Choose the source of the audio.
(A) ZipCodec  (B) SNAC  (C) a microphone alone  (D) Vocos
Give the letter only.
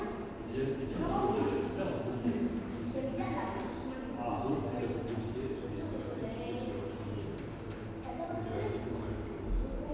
C